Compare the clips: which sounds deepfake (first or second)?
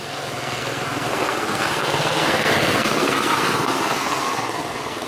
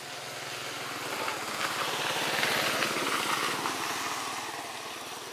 first